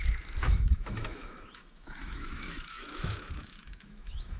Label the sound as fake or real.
fake